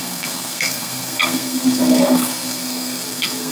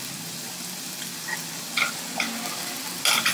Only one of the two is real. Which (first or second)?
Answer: second